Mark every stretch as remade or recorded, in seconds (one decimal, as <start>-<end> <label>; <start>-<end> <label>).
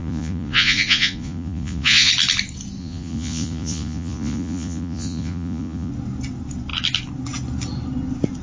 0.0-2.1 remade; 2.1-2.8 recorded; 2.8-5.9 remade; 5.9-8.4 recorded